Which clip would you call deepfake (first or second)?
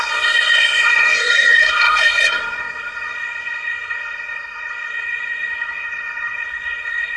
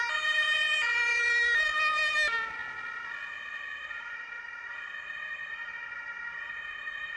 first